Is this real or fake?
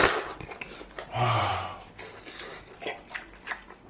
real